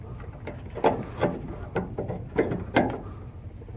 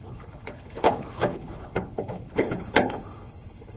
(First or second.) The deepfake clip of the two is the second